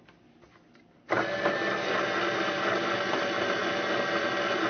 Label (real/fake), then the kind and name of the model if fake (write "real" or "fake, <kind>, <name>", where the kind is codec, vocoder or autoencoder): real